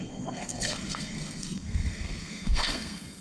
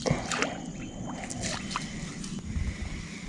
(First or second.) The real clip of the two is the second